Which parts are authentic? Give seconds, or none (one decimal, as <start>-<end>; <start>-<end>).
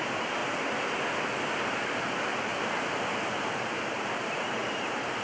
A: 0.4-1.4; 4.6-5.2